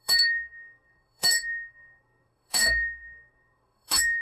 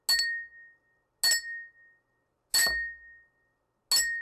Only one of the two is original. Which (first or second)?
second